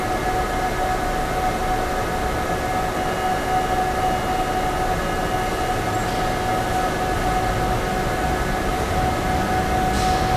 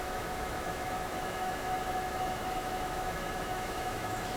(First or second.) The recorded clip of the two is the first